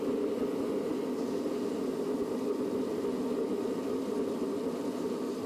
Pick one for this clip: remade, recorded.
recorded